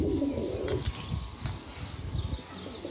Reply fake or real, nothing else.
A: real